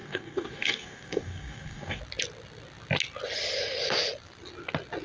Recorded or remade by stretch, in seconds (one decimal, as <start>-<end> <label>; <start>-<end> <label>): 0.0-2.0 remade; 2.0-5.0 recorded

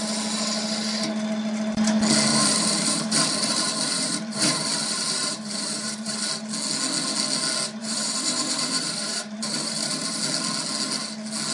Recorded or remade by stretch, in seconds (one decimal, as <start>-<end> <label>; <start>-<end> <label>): 0.0-2.3 recorded; 2.3-6.3 remade; 6.3-7.8 recorded; 7.8-10.2 remade; 10.2-11.5 recorded

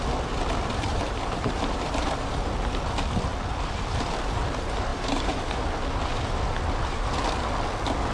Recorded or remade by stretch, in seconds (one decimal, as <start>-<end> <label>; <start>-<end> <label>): 0.0-0.9 recorded; 0.9-2.1 remade; 2.1-4.9 recorded; 4.9-5.5 remade; 5.5-8.1 recorded

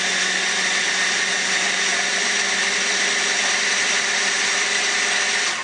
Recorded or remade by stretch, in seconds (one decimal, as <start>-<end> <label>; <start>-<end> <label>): 0.0-5.6 recorded

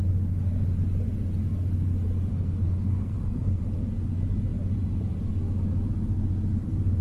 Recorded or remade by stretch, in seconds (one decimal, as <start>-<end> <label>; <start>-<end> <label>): 0.0-2.3 recorded; 2.3-3.6 remade; 3.6-7.0 recorded

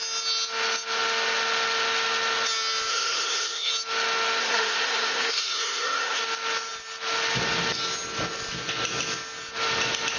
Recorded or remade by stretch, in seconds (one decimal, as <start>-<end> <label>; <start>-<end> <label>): 0.0-2.9 recorded; 2.9-3.7 remade; 3.7-4.4 recorded; 4.4-6.2 remade; 6.2-10.2 recorded